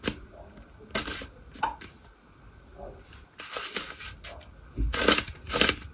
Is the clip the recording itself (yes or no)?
yes